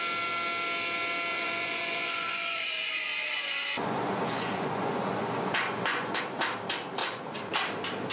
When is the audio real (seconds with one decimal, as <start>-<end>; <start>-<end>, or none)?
0.0-1.3; 6.2-7.0; 7.5-8.1